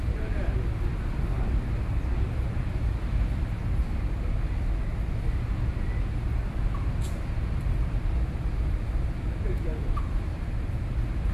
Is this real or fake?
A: real